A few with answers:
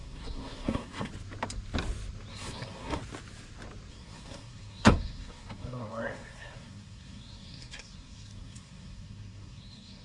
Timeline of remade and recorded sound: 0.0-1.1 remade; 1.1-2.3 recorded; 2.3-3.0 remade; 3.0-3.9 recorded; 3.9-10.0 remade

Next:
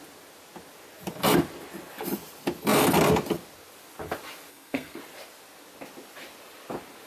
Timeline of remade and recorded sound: 0.0-4.5 recorded; 4.5-5.0 remade; 5.0-7.1 recorded

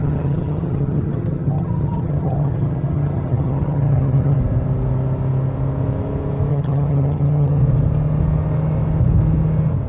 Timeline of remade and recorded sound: 0.0-4.4 remade; 4.4-6.5 recorded; 6.5-7.6 remade; 7.6-9.9 recorded